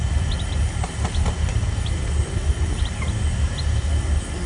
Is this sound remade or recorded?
recorded